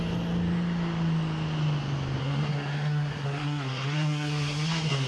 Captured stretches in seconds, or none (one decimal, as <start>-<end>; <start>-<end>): 0.0-2.2

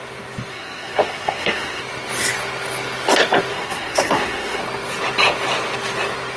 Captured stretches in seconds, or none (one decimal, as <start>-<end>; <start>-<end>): 0.0-0.5; 1.8-3.5; 4.6-6.4

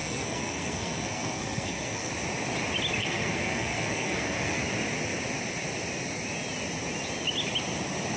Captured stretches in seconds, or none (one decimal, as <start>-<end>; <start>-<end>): 2.1-3.0; 4.6-8.2

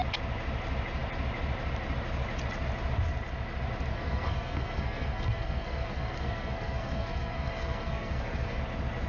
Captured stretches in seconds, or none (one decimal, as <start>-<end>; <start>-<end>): 0.0-3.9; 8.6-9.1

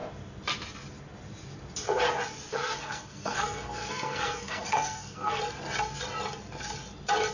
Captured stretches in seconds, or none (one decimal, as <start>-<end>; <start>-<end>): 0.0-2.5; 5.4-7.3